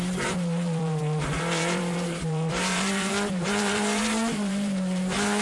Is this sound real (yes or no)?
no